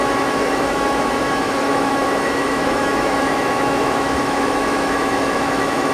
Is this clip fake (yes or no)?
yes